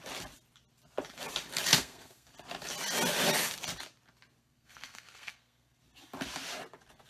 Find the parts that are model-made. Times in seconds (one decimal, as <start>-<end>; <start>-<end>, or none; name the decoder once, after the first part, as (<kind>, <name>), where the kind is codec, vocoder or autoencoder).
1.7-2.3 (codec, SNAC); 4.4-5.8